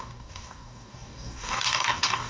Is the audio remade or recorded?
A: remade